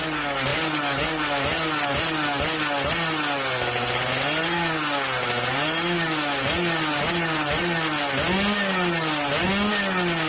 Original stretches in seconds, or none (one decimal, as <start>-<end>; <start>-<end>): 0.0-10.3